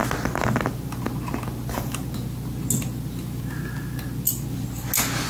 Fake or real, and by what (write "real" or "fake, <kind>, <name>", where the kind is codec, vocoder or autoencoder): real